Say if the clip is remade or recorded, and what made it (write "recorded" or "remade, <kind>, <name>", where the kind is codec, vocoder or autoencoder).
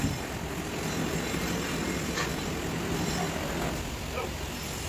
remade, vocoder, BigVGAN v2